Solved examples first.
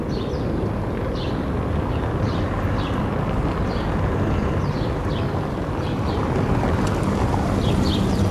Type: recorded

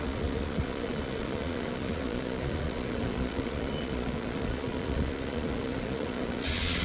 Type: remade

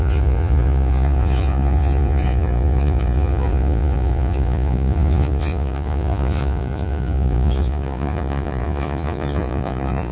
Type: remade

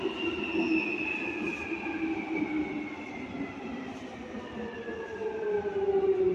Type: recorded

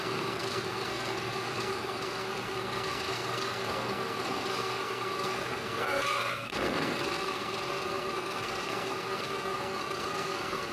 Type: remade